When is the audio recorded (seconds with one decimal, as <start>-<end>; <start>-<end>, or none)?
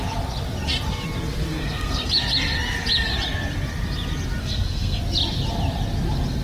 0.0-1.5; 2.1-4.4; 5.0-6.4